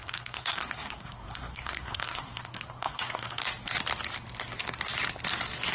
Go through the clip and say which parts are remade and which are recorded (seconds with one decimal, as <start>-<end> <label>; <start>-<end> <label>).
0.0-3.4 remade; 3.4-5.7 recorded